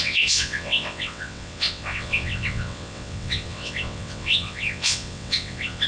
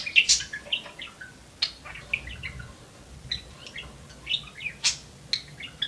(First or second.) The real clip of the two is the second